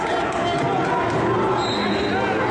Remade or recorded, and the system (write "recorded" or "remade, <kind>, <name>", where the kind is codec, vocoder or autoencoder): recorded